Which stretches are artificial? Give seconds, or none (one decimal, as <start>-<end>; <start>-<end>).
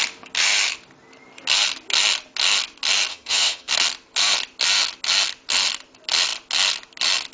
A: 3.1-3.7